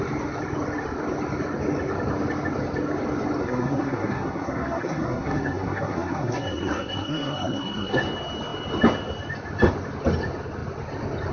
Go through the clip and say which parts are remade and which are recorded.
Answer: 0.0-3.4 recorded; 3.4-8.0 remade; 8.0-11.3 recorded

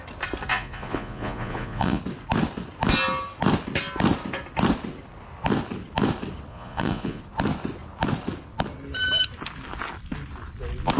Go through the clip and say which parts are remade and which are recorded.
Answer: 0.0-0.5 recorded; 0.5-2.0 remade; 2.0-6.5 recorded; 6.5-7.2 remade; 7.2-11.0 recorded

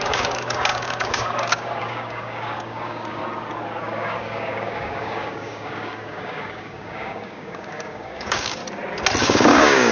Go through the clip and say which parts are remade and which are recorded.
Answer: 0.0-3.2 remade; 3.2-3.8 recorded; 3.8-8.6 remade; 8.6-9.2 recorded; 9.2-9.9 remade

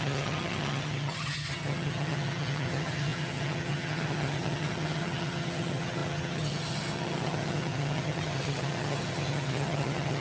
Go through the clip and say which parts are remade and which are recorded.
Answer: 0.0-10.2 remade

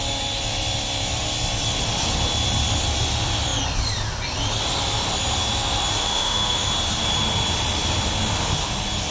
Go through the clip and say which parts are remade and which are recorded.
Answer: 0.0-6.0 recorded; 6.0-6.7 remade; 6.7-9.1 recorded